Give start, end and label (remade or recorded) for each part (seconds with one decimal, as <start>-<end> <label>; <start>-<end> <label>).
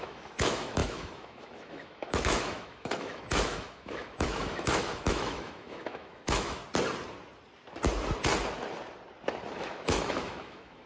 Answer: 0.0-6.6 remade; 6.6-9.6 recorded; 9.6-10.9 remade